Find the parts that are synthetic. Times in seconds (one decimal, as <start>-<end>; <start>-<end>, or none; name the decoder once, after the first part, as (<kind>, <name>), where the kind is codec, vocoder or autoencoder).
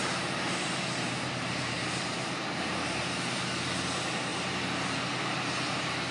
0.0-3.0 (vocoder, BigVGAN v2)